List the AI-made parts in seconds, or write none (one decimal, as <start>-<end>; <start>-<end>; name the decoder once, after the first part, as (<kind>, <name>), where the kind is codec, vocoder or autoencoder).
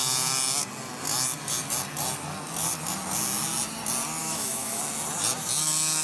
4.2-4.8 (autoencoder, DAC-VAE)